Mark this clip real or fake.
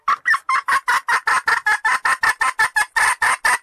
real